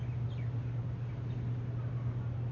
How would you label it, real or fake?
real